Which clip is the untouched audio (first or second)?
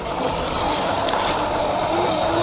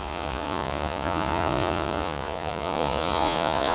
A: first